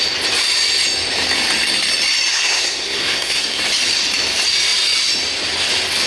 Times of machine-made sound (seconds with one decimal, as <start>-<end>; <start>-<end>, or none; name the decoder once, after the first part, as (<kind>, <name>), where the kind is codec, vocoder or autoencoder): 2.3-3.6 (codec, SNAC)